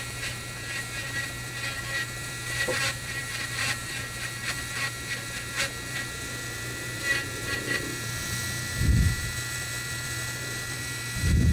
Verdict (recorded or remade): remade